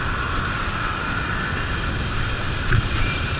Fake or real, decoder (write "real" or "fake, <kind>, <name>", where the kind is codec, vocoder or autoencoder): real